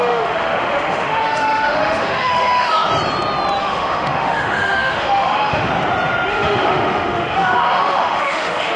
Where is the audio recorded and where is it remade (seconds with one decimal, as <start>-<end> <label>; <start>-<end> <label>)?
0.0-2.9 remade; 2.9-3.6 recorded; 3.6-5.7 remade; 5.7-6.3 recorded; 6.3-8.8 remade